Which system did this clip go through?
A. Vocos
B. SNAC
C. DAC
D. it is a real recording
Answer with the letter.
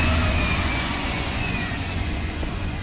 A